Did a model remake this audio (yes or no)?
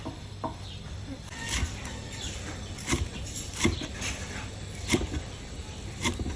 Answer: yes